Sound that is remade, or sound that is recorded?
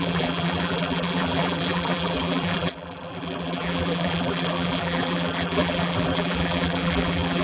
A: remade